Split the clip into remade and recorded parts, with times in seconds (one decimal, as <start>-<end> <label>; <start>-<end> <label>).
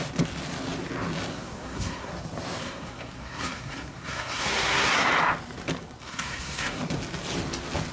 0.0-1.3 recorded; 1.3-2.1 remade; 2.1-2.6 recorded; 2.6-5.1 remade; 5.1-6.0 recorded; 6.0-6.8 remade; 6.8-7.9 recorded